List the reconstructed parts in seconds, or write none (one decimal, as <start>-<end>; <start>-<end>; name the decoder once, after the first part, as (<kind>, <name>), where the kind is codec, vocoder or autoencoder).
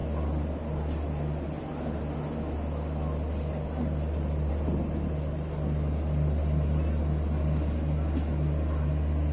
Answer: none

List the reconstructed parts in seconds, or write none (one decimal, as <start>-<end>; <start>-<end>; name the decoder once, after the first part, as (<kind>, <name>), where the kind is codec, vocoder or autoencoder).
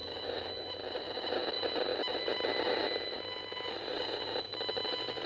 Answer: 0.0-0.7 (autoencoder, DAC-VAE)